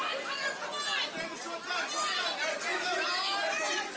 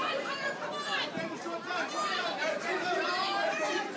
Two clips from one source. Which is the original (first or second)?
first